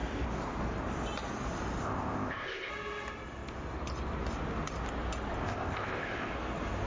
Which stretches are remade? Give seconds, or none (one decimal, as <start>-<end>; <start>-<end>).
1.8-2.7; 5.4-6.3